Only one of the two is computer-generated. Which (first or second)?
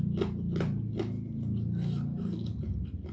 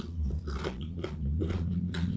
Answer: second